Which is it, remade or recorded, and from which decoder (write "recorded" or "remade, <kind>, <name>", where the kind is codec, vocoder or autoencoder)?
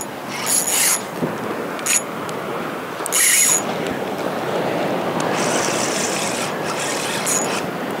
recorded